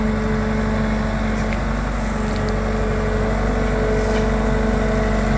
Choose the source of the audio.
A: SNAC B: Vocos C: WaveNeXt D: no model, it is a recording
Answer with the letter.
D